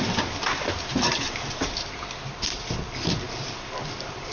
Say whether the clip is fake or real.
fake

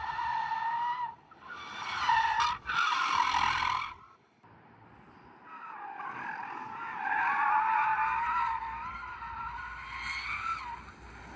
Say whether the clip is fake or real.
real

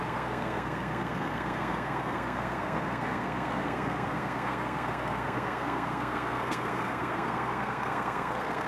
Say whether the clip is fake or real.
fake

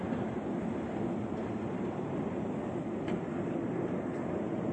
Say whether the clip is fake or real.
real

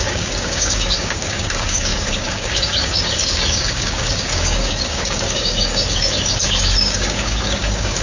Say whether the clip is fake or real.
fake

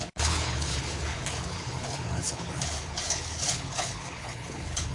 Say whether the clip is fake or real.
fake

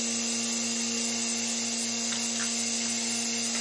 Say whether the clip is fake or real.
real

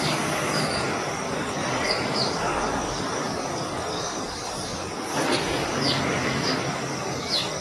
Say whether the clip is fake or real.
fake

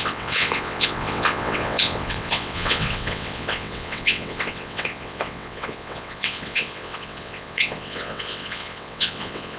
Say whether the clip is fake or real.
fake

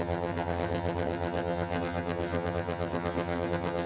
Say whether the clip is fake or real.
fake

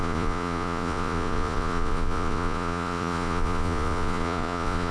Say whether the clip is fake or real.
fake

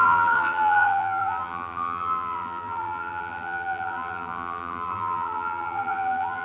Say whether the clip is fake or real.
fake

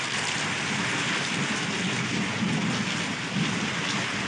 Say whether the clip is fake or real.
real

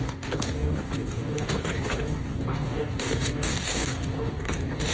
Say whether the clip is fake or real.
fake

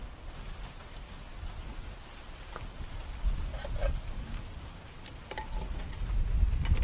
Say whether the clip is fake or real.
real